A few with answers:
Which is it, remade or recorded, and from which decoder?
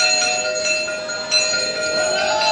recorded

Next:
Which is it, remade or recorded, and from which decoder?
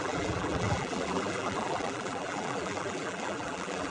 remade, vocoder, BigVGAN v2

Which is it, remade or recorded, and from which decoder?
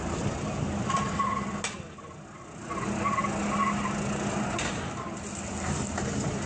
recorded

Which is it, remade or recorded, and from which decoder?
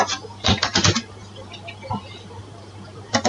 remade, vocoder, BigVGAN v2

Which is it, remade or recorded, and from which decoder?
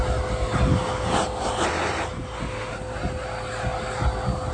recorded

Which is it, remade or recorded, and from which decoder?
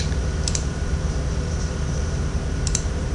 remade, vocoder, BigVGAN v2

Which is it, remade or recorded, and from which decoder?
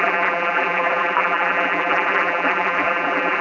remade, vocoder, BigVGAN v2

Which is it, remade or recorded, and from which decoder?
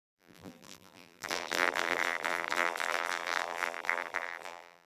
remade, vocoder, BigVGAN v2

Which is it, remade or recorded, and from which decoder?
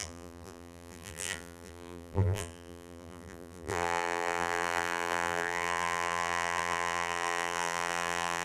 remade, vocoder, BigVGAN v2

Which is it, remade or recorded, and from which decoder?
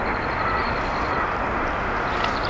recorded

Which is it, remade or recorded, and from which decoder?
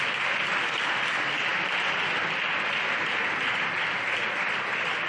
recorded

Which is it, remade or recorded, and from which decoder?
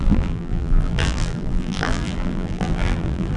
remade, vocoder, BigVGAN v2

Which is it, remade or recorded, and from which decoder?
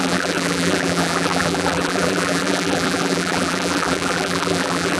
remade, vocoder, BigVGAN v2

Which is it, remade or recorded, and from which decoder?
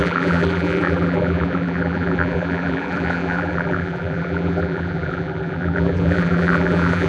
remade, vocoder, BigVGAN v2